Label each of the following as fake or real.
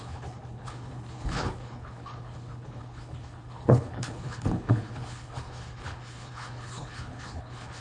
fake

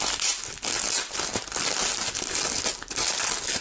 real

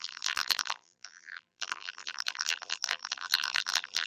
fake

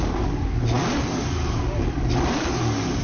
fake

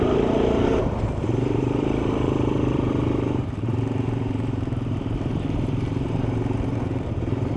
fake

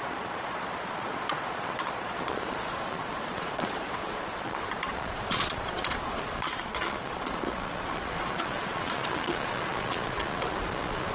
fake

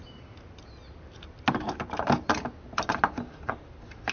real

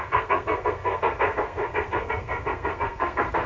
fake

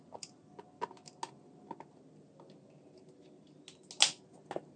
real